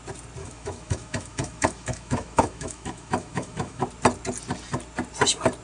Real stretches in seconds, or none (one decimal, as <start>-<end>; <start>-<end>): 0.0-0.4; 3.8-5.6